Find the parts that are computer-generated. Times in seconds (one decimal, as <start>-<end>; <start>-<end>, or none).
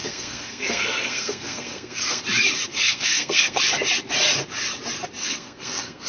0.0-2.2; 2.7-3.6; 5.2-6.1